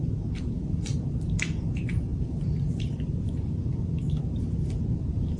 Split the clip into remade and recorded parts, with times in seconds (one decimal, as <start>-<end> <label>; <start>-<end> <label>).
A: 0.0-5.4 remade